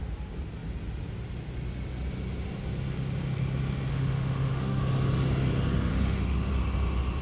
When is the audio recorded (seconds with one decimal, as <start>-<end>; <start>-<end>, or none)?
0.0-3.9; 4.8-5.9; 6.5-7.2